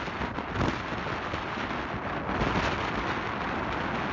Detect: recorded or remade recorded